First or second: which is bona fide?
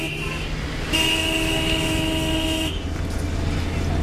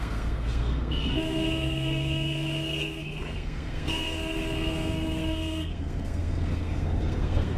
first